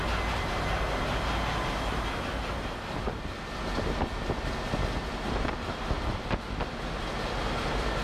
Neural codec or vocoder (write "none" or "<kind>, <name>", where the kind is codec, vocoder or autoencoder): none